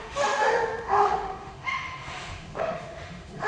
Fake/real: fake